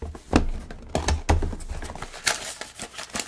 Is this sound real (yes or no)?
yes